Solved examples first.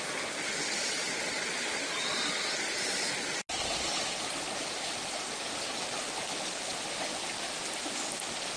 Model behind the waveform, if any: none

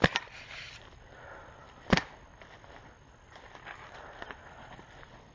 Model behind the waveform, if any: none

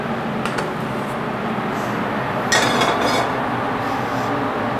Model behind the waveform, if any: none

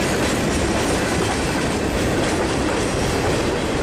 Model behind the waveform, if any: vocoder, BigVGAN v2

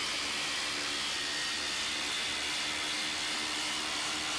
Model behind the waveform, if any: none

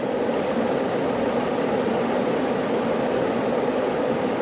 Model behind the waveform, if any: none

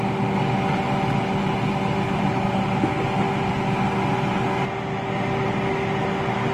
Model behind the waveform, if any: none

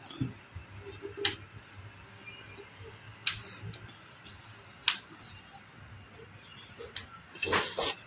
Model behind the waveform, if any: none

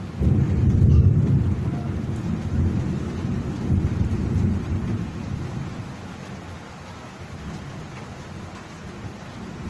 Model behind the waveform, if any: none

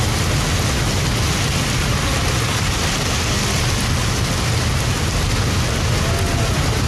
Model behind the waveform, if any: none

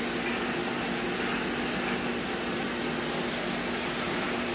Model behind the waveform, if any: none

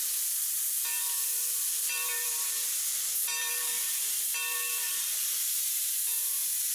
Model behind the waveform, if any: vocoder, BigVGAN v2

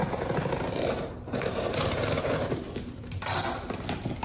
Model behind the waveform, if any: none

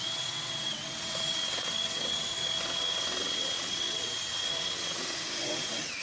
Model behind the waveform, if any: vocoder, WaveNeXt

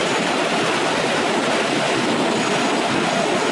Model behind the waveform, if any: none